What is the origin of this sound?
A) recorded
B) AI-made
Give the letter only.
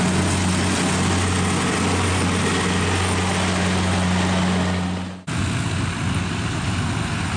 A